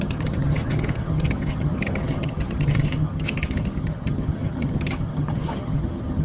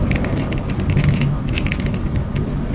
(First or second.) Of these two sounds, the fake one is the first